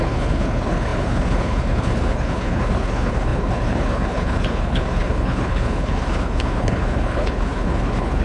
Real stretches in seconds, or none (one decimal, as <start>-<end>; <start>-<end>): none